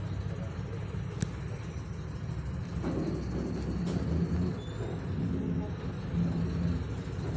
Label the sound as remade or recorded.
recorded